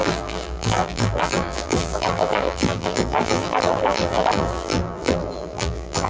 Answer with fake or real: fake